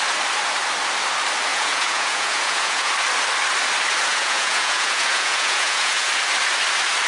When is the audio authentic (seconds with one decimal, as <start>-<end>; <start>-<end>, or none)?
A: 0.0-1.5; 2.9-4.1; 6.1-7.1